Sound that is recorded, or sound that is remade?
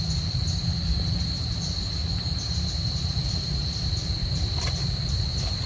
remade